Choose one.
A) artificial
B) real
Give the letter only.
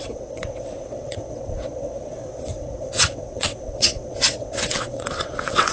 A